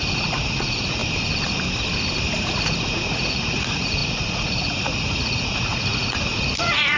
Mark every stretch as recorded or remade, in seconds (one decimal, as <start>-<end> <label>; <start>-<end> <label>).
0.0-1.0 remade; 1.0-2.4 recorded; 2.4-7.0 remade

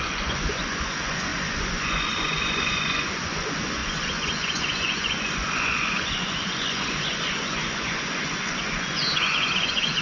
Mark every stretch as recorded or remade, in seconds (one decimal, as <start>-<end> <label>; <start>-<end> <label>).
0.0-10.0 remade

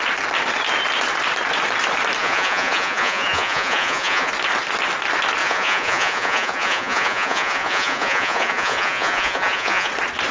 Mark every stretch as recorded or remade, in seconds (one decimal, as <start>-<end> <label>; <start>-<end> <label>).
0.0-2.2 recorded; 2.2-4.3 remade; 4.3-5.4 recorded; 5.4-9.9 remade; 9.9-10.3 recorded